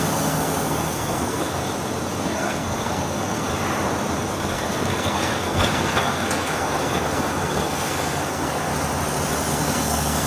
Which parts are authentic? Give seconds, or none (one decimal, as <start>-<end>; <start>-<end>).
1.6-2.2; 3.5-4.3; 8.7-9.5